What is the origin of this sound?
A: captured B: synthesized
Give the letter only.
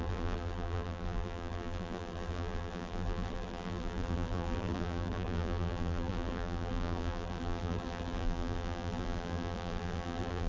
B